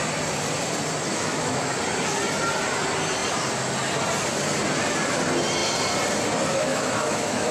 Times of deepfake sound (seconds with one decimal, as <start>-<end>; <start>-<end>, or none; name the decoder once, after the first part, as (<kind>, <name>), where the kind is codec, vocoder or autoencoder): 1.1-1.7 (autoencoder, DAC-VAE); 6.5-7.5